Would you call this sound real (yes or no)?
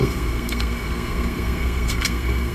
no